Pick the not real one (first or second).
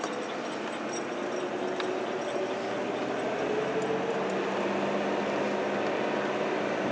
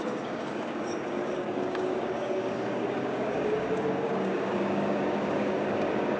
second